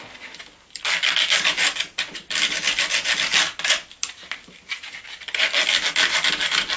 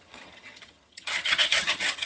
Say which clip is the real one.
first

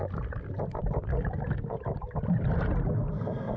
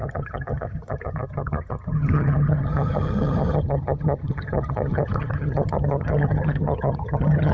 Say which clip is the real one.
first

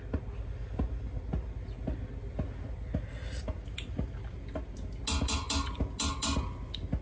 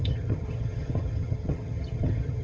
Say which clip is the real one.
first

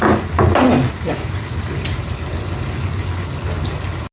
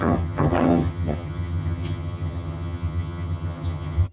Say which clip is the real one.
first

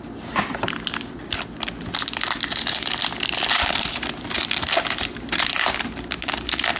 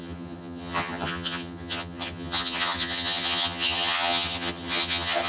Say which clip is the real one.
first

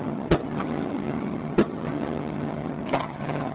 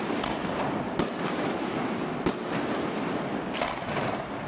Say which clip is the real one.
second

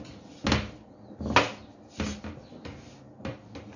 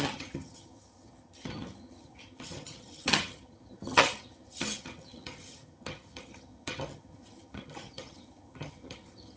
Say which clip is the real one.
first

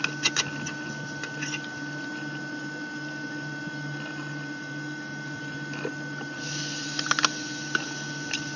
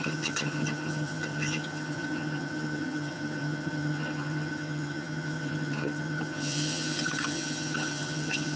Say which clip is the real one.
first